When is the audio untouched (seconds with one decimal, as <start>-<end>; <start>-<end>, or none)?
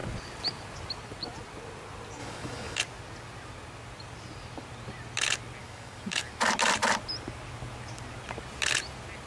0.0-2.2; 2.8-5.6; 6.3-9.3